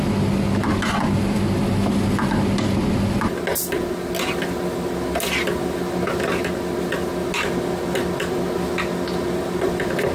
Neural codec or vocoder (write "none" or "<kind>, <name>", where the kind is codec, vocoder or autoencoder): none